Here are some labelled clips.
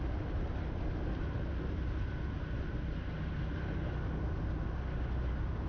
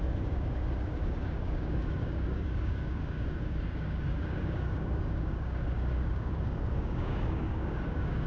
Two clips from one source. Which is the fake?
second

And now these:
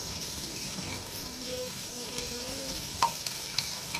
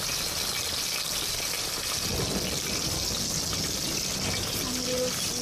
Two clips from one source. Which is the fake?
first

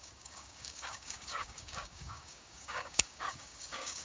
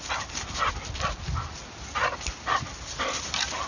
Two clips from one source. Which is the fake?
first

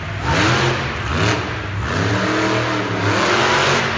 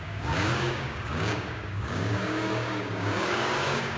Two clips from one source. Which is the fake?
second